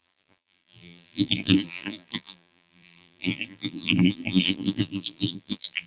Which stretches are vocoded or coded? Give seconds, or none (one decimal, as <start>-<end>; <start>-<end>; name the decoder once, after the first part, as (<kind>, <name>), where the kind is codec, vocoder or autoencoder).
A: 0.0-5.9 (vocoder, BigVGAN v2)